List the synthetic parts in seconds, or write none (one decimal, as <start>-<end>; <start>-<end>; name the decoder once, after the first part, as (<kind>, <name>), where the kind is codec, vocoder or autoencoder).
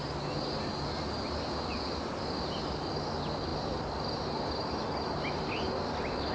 none